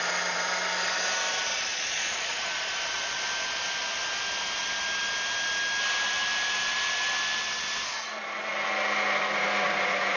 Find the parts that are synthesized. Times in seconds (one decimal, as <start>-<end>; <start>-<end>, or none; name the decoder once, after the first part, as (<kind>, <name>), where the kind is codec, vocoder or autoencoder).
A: 1.5-3.3 (vocoder, Vocos)